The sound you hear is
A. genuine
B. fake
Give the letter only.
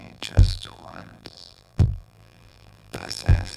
B